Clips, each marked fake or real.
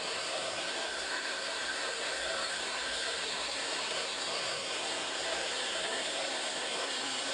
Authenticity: fake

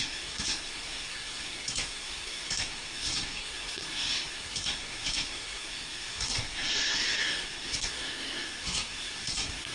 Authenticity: fake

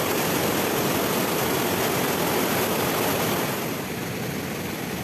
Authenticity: real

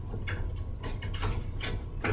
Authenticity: real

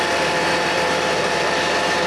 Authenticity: fake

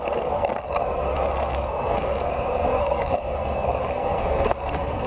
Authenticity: fake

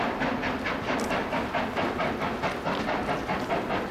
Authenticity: real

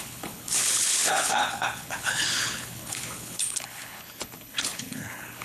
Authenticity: fake